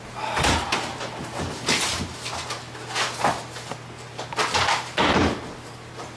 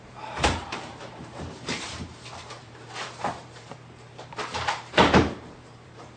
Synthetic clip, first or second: second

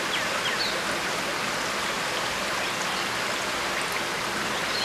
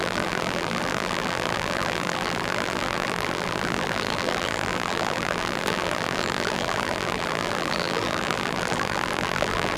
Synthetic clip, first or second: second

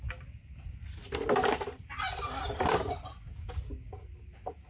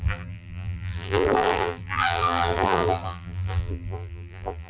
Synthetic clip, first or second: second